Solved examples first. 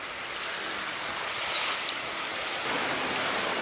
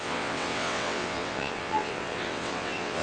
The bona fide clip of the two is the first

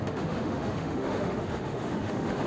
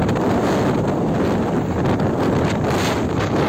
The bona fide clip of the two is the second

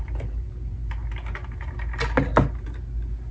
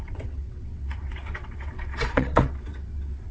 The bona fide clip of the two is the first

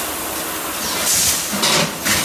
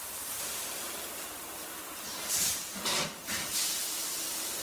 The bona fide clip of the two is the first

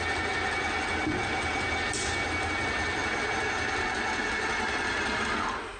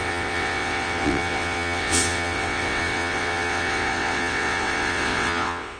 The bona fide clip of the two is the first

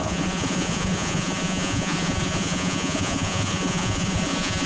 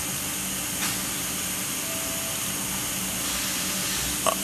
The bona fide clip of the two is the second